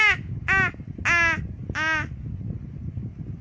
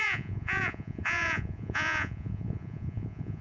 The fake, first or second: second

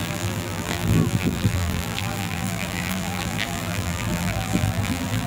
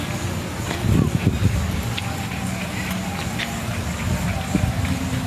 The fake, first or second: first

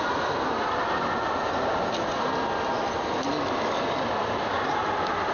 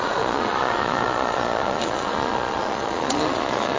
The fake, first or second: second